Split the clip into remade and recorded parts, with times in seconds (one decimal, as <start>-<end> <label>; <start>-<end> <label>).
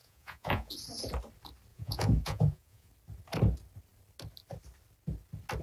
0.0-0.7 remade; 0.7-1.7 recorded; 1.7-2.9 remade; 2.9-5.6 recorded